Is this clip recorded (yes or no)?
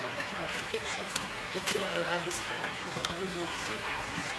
no